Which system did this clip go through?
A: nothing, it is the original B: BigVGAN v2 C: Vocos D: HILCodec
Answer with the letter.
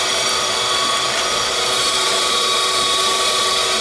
B